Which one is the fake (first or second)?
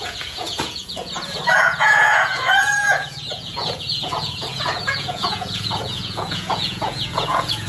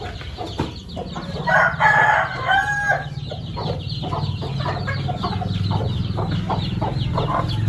first